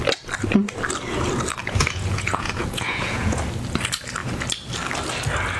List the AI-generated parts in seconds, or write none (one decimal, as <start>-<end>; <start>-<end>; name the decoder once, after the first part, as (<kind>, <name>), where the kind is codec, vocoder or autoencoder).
1.6-3.4 (vocoder, Vocos)